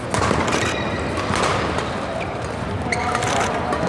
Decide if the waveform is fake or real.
real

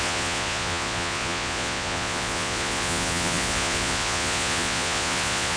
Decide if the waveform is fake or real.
fake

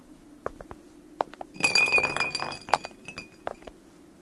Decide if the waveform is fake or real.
real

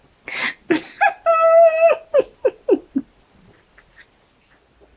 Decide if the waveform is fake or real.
real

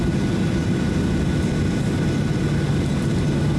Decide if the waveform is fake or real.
real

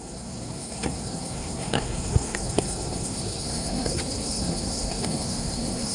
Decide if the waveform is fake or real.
fake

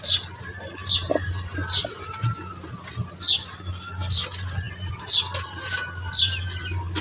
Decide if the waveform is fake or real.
real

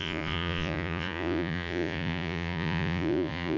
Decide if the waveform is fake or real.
fake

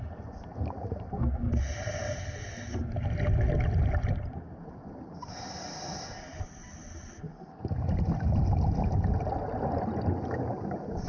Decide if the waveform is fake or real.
real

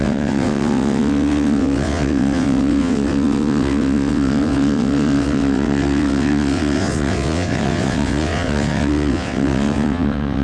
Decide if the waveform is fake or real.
fake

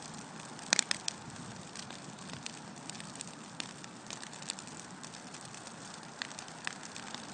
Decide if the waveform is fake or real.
fake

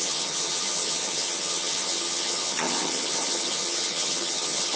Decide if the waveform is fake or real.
fake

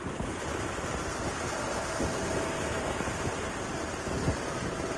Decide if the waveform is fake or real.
real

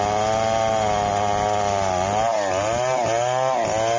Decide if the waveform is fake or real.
real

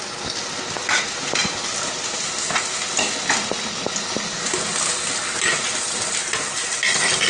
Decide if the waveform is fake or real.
real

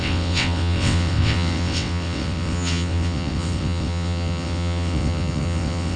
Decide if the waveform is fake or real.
fake